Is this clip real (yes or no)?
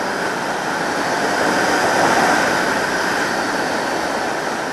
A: yes